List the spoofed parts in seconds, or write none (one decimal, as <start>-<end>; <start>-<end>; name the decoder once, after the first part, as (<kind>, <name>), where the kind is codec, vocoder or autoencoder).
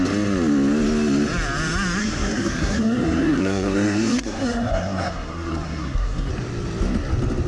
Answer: 2.0-6.3 (codec, SNAC)